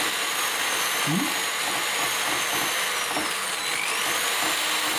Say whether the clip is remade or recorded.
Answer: recorded